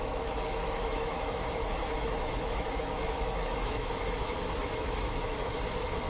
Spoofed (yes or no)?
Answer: yes